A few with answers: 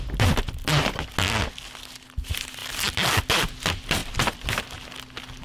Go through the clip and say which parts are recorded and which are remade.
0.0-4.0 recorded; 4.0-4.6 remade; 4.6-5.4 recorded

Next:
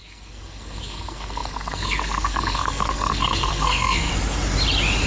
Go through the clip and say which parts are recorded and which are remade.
0.0-4.1 remade; 4.1-5.1 recorded